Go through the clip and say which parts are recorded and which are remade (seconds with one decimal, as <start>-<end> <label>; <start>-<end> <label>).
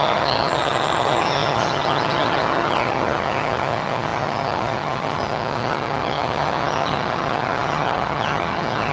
0.0-8.9 remade